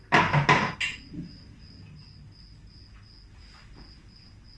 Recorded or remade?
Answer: recorded